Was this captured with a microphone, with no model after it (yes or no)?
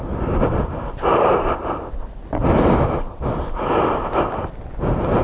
yes